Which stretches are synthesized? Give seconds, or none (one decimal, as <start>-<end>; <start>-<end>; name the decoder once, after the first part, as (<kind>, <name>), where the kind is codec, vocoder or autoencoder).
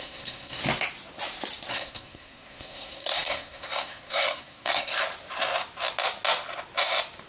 0.0-0.6 (codec, SNAC); 1.7-4.9